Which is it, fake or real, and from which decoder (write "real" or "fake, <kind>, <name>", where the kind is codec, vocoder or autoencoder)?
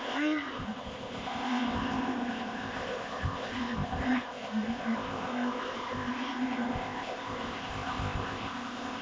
fake, codec, ZipCodec